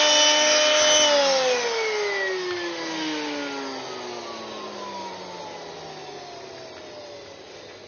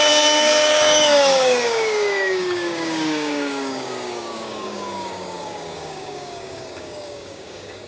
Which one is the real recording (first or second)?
first